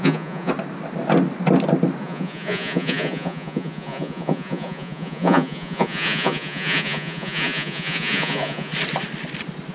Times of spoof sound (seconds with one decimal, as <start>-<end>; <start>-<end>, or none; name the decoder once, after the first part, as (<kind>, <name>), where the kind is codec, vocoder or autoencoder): 0.0-0.5 (vocoder, Vocos); 2.0-8.7